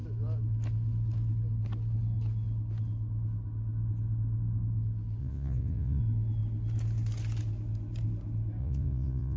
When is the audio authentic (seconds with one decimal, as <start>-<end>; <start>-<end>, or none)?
0.0-5.2; 6.0-8.6